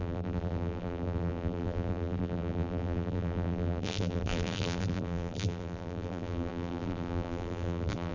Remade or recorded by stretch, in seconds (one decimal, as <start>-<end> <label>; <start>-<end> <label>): 0.0-8.1 remade